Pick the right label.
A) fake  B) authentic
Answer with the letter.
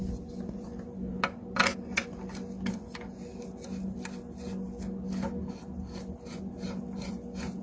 B